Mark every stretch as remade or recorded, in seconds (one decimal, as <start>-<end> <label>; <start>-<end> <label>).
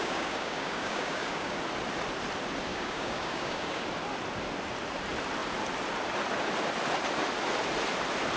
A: 0.0-1.6 remade; 1.6-2.7 recorded; 2.7-3.8 remade; 3.8-8.4 recorded